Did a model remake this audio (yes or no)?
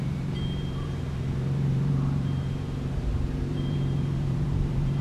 yes